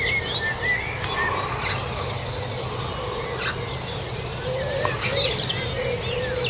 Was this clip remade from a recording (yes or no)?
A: no